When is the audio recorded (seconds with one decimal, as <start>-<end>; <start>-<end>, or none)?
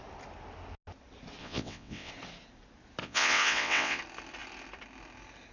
0.0-1.4; 2.1-3.0; 4.0-5.5